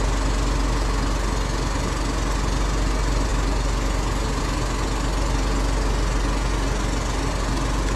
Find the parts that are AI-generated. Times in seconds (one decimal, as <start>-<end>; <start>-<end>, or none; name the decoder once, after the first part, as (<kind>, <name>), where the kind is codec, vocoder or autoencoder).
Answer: none